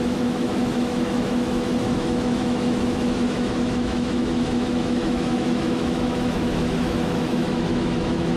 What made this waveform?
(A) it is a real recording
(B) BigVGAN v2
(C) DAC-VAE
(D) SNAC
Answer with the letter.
C